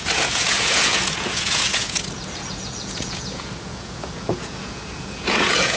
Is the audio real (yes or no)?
no